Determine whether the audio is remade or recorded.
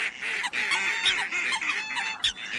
recorded